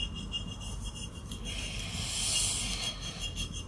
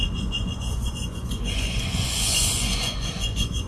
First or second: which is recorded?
first